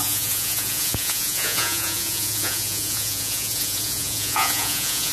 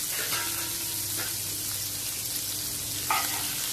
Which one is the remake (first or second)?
first